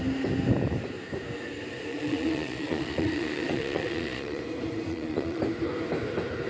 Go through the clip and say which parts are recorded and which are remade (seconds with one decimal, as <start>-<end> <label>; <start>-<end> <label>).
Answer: 0.0-1.9 recorded; 1.9-4.4 remade; 4.4-4.9 recorded; 4.9-5.4 remade; 5.4-6.5 recorded